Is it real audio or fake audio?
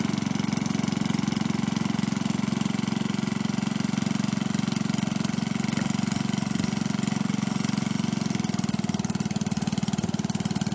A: real